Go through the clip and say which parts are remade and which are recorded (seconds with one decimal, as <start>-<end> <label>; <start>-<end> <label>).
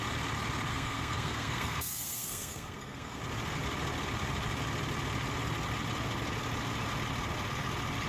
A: 0.0-0.7 recorded; 0.7-3.2 remade; 3.2-8.1 recorded